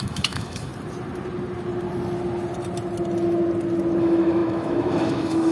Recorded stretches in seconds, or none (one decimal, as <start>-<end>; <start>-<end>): 0.7-4.0